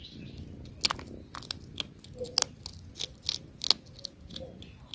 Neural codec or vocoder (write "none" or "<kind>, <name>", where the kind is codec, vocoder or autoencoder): none